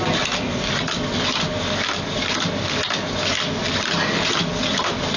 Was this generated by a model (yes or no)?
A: no